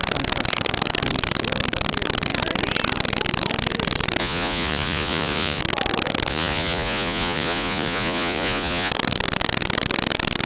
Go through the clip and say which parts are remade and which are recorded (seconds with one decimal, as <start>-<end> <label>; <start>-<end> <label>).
0.0-4.2 recorded; 4.2-5.6 remade; 5.6-6.3 recorded; 6.3-8.9 remade; 8.9-10.5 recorded